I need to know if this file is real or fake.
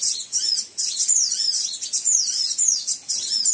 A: real